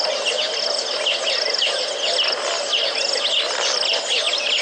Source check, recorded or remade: recorded